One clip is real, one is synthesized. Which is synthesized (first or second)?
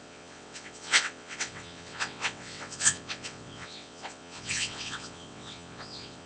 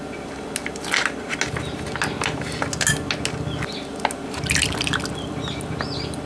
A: first